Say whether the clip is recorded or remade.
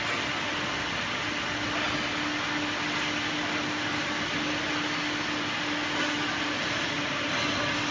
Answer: recorded